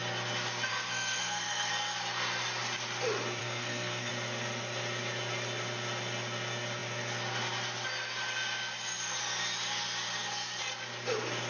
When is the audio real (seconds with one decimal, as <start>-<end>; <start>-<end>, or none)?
0.0-0.7; 1.7-3.4; 4.1-11.5

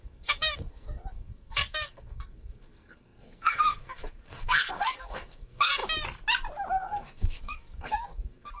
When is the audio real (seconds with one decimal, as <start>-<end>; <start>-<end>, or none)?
5.8-6.7

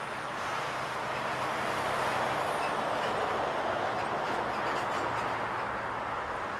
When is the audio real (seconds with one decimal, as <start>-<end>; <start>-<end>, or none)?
0.0-6.6

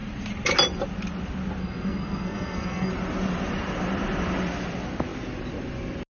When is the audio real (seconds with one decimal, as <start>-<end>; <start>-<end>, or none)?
0.0-1.6; 2.9-6.1

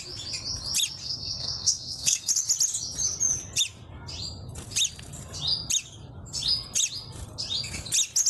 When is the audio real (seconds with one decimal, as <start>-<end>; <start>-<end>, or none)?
0.0-1.0; 2.3-8.3